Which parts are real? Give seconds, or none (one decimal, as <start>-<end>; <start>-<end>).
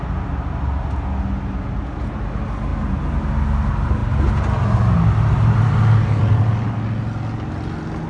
0.0-8.1